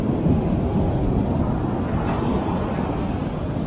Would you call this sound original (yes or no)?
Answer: yes